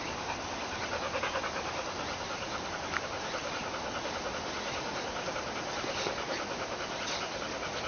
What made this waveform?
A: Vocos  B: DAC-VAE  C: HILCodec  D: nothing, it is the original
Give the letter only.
D